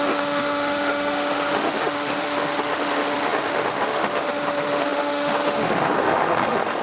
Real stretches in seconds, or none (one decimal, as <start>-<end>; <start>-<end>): none